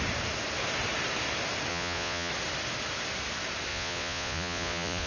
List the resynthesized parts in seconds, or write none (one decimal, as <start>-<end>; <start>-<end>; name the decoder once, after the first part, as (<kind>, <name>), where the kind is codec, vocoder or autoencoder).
1.7-2.3 (vocoder, Vocos); 3.7-5.1